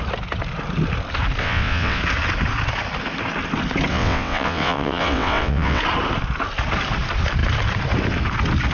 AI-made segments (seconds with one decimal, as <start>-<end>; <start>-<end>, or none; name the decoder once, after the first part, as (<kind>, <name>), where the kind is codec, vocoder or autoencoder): 1.4-2.0 (vocoder, WaveNeXt); 3.9-5.8